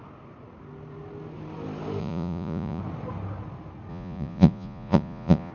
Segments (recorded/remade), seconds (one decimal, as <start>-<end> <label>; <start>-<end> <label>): 0.0-2.0 recorded; 2.0-2.8 remade; 2.8-3.9 recorded; 3.9-5.5 remade